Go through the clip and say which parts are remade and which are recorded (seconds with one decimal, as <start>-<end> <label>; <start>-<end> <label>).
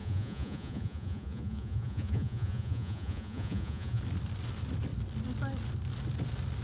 0.0-4.0 remade; 4.0-6.6 recorded